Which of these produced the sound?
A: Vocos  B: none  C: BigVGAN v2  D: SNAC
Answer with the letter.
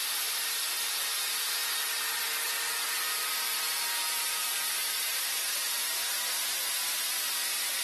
B